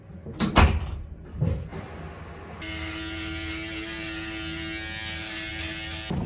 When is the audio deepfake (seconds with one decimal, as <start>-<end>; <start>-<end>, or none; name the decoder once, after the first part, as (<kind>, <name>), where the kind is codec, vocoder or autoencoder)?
none